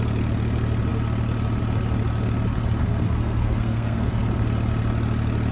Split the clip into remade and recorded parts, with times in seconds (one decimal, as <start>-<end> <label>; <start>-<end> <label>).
0.0-2.8 recorded; 2.8-4.1 remade; 4.1-5.5 recorded